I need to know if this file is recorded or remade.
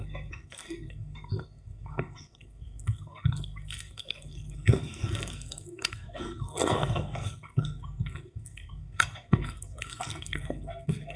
remade